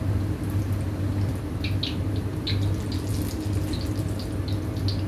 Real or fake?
real